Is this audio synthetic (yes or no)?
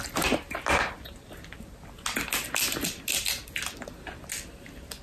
no